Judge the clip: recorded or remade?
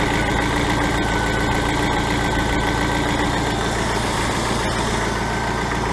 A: recorded